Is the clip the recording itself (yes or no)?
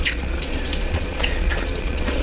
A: no